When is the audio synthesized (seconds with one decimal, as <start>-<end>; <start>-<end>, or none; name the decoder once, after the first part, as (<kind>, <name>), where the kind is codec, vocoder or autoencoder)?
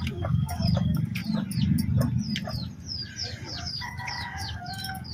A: 0.0-1.2 (codec, DAC); 3.6-5.1